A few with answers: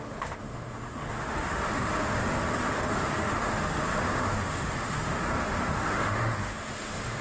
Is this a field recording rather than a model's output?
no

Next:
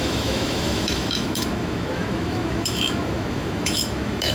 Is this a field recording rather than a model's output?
no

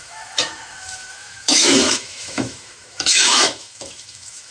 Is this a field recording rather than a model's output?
no